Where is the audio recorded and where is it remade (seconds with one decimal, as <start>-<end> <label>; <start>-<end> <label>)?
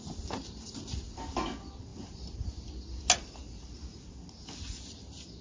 0.0-5.4 recorded